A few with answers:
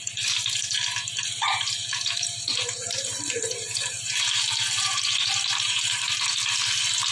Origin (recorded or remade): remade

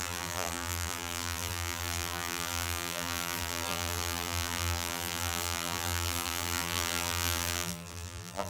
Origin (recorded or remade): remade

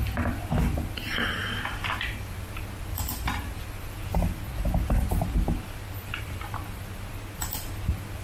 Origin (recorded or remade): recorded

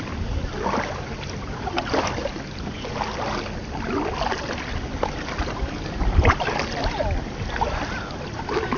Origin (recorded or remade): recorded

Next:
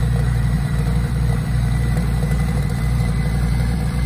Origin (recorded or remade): remade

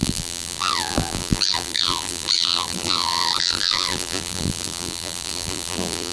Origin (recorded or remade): remade